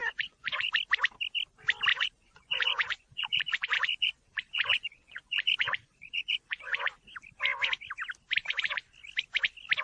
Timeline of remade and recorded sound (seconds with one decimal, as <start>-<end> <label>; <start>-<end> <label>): 0.0-0.7 remade; 0.7-1.9 recorded; 1.9-7.0 remade; 7.0-8.4 recorded; 8.4-8.9 remade; 8.9-9.8 recorded